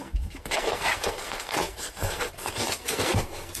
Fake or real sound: fake